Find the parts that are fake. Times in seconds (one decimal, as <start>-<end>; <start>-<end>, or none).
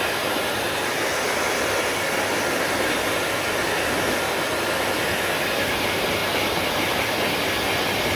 none